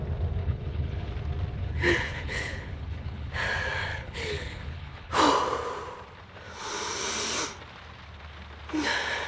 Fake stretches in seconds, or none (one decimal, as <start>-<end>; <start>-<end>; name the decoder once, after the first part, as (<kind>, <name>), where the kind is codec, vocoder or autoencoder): 0.4-1.1 (codec, HILCodec); 1.6-3.3; 3.9-5.1